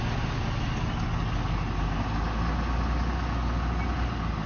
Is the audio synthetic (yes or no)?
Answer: no